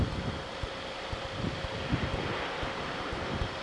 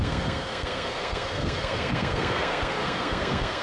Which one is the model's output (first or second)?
second